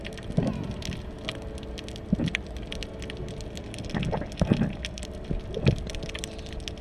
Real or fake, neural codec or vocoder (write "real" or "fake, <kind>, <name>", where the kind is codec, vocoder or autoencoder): real